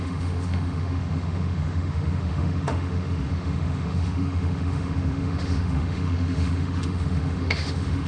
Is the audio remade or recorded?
remade